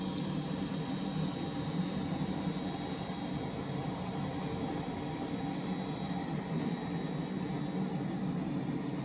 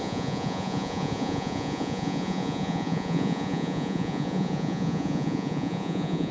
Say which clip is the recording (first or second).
first